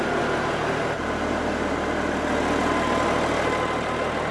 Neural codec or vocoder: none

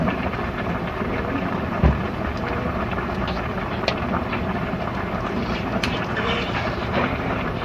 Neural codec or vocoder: vocoder, BigVGAN v2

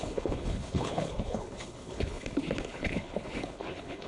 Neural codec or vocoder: codec, HILCodec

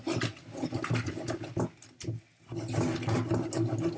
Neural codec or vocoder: none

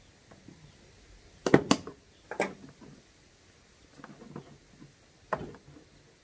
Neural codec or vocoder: none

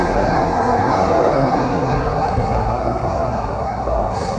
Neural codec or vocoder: codec, SNAC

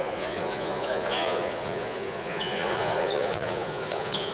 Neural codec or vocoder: vocoder, Vocos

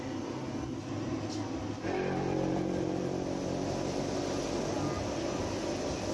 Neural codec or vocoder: none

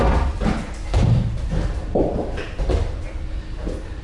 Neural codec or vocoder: vocoder, BigVGAN v2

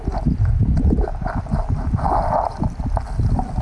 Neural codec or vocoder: none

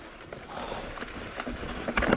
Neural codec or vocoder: none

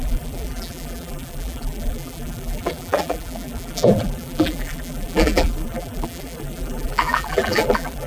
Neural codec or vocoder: vocoder, BigVGAN v2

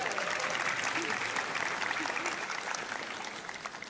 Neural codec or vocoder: none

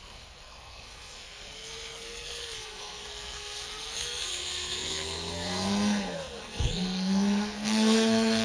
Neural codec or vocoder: codec, SNAC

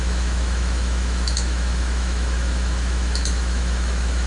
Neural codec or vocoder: autoencoder, DAC-VAE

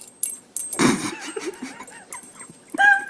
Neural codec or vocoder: none